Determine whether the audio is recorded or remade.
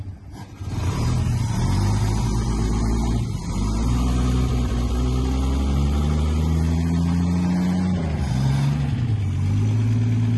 recorded